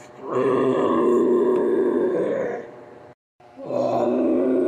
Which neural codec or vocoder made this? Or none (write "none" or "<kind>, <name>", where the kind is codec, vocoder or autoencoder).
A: vocoder, BigVGAN v2